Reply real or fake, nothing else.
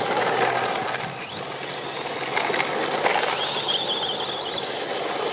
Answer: real